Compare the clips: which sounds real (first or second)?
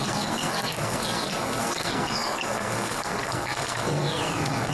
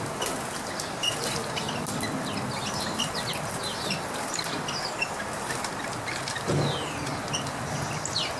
second